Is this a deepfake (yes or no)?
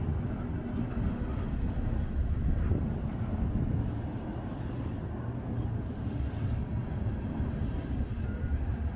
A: no